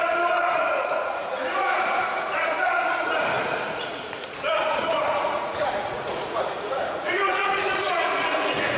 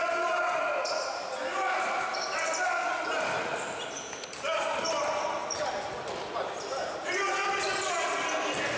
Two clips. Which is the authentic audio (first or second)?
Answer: second